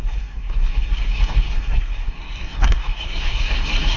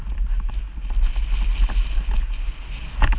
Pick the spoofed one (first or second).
first